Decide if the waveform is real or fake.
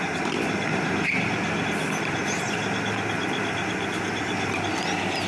real